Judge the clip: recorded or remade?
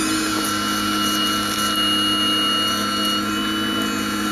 recorded